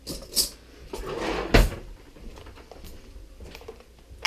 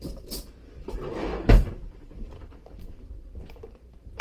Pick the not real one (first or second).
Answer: second